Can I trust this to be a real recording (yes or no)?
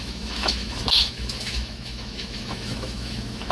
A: no